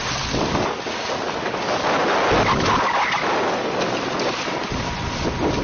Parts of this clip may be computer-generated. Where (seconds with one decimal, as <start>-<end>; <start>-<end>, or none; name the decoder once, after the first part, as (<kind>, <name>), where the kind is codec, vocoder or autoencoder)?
none